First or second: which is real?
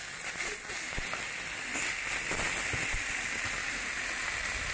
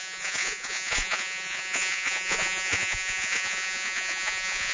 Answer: first